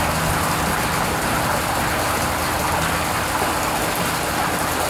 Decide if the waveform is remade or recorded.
recorded